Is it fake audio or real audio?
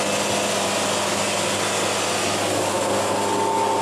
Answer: real